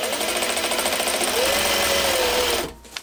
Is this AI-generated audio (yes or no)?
no